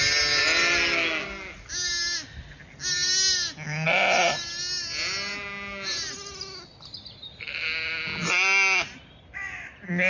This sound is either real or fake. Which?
real